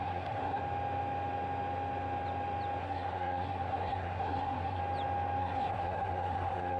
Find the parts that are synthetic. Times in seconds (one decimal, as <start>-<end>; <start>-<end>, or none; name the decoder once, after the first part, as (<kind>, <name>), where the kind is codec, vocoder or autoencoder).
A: 0.0-0.6 (codec, SNAC); 2.8-4.8; 5.4-6.8